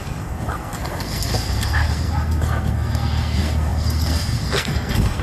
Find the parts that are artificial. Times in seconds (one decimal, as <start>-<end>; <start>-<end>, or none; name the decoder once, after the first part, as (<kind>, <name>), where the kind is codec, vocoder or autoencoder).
0.0-5.2 (codec, SNAC)